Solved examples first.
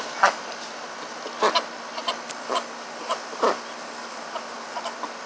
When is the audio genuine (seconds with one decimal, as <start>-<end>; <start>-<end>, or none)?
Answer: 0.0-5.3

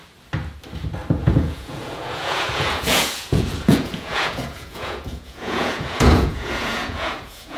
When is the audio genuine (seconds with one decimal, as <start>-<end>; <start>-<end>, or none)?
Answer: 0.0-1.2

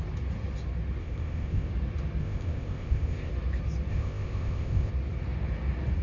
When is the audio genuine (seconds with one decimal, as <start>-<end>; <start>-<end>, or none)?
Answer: 0.0-1.0; 1.7-2.2; 3.3-3.9; 4.9-6.0

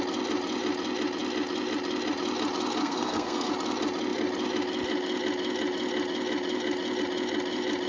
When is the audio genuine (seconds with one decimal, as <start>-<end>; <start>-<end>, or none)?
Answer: 0.0-2.8; 3.5-7.9

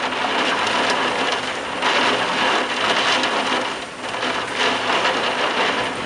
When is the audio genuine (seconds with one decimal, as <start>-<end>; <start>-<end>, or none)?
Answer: 0.0-6.1

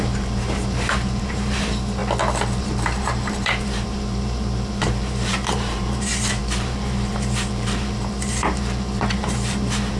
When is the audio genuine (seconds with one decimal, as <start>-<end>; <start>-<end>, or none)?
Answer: 2.0-2.6